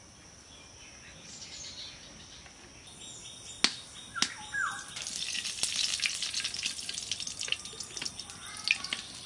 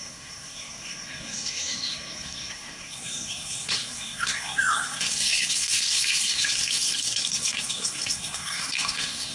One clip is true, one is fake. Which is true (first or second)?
first